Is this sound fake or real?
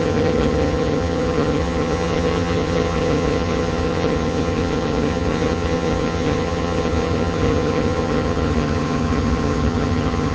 fake